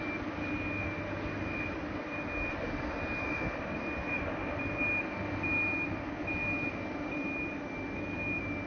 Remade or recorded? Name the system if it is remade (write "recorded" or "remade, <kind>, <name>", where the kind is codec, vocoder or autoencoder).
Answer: recorded